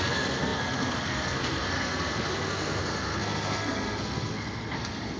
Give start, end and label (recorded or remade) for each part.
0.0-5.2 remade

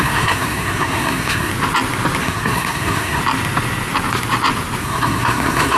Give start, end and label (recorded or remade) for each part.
0.0-1.5 remade; 1.5-2.2 recorded; 2.2-3.2 remade; 3.2-4.8 recorded; 4.8-5.8 remade

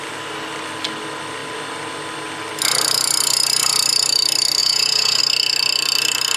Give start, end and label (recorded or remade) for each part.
0.0-4.6 recorded; 4.6-5.2 remade; 5.2-6.4 recorded

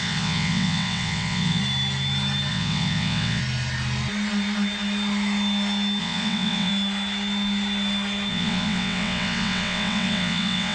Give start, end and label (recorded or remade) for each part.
0.0-1.6 remade; 1.6-2.5 recorded; 2.5-3.4 remade; 3.4-6.0 recorded; 6.0-6.7 remade; 6.7-8.3 recorded; 8.3-10.7 remade

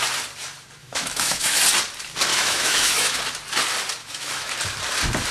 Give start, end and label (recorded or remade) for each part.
0.0-0.8 recorded; 0.8-1.6 remade; 1.6-2.3 recorded; 2.3-3.2 remade; 3.2-4.0 recorded; 4.0-4.5 remade; 4.5-5.3 recorded

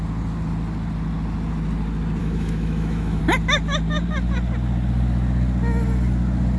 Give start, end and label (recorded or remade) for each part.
0.0-2.2 recorded; 2.2-3.2 remade; 3.2-6.6 recorded

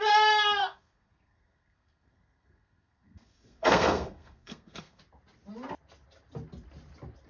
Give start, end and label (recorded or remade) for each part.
0.0-0.6 recorded; 0.6-5.0 remade; 5.0-7.3 recorded